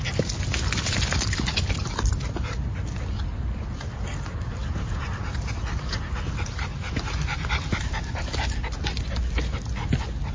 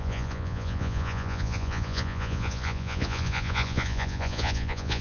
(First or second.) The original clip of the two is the first